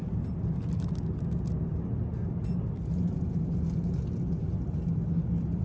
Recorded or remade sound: recorded